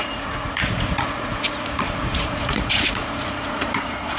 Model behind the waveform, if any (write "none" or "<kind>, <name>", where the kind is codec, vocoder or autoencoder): vocoder, Vocos